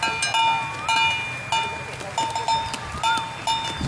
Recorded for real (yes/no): yes